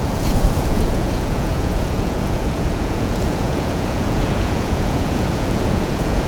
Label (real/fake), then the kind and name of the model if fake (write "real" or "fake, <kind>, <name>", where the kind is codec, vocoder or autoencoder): fake, vocoder, Vocos